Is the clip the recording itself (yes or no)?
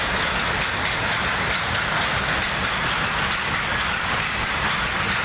yes